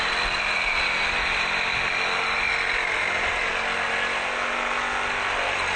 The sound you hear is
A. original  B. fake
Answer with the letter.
A